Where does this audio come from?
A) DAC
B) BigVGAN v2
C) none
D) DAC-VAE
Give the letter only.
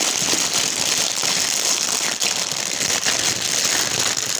C